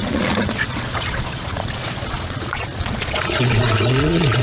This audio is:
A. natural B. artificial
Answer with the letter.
B